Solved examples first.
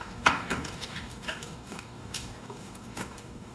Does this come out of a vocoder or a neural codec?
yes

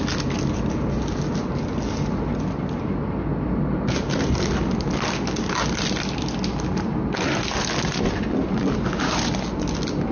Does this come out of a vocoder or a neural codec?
no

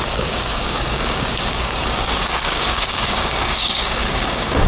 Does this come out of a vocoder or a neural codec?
yes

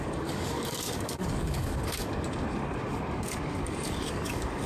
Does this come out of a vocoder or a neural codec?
yes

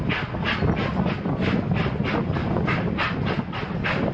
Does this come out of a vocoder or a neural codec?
no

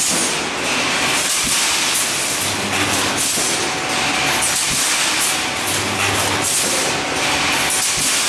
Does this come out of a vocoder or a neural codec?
no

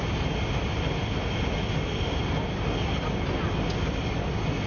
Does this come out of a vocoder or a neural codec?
no